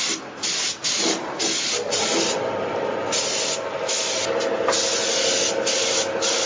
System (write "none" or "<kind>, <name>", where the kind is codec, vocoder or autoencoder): none